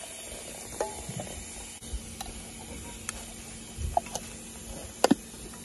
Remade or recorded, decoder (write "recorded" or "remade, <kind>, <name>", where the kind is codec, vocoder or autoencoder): recorded